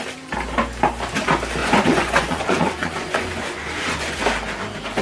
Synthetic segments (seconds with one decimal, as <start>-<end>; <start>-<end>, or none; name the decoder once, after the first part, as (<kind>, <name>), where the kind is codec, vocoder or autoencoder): 1.6-4.2 (vocoder, Vocos)